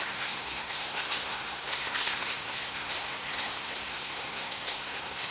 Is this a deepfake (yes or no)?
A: yes